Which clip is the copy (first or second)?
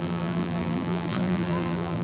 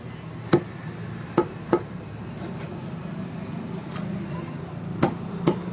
first